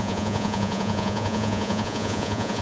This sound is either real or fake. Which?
fake